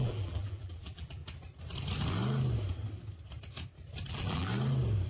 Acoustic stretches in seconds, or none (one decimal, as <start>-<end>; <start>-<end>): 1.2-4.1; 4.5-5.1